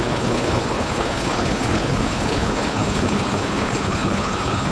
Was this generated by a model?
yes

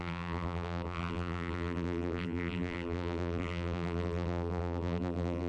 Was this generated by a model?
yes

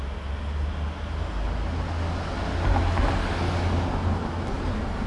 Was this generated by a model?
no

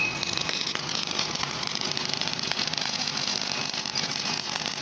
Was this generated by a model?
yes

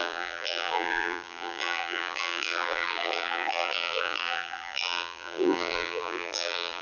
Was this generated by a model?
yes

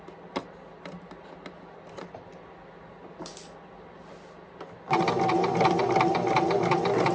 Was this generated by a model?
no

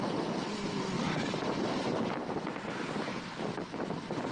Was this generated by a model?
no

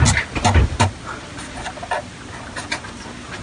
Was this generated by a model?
no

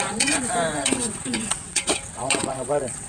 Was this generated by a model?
yes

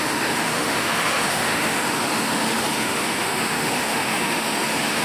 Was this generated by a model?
yes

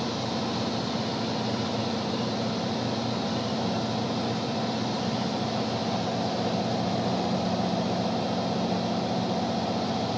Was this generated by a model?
no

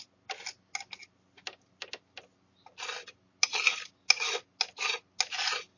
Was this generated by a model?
no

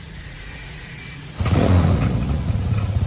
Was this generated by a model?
yes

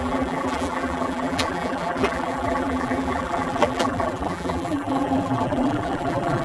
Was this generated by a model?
yes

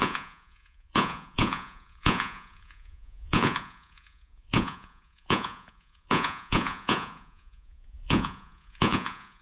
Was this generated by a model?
yes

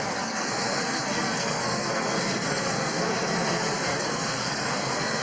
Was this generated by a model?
yes